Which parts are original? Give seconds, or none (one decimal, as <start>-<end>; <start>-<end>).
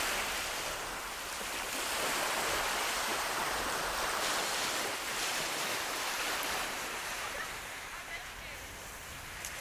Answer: 0.0-3.1; 8.3-9.6